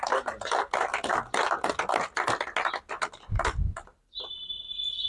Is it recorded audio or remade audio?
recorded